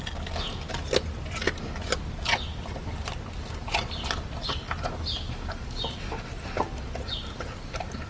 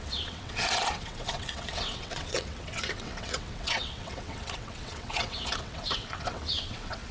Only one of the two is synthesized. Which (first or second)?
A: second